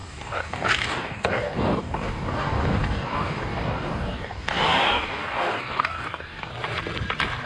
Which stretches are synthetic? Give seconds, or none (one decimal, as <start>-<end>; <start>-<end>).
0.0-6.5